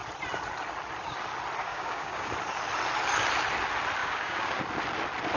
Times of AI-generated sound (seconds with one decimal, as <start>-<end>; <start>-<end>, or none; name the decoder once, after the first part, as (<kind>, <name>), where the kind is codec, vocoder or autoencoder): 1.6-2.3 (codec, DAC); 4.0-4.6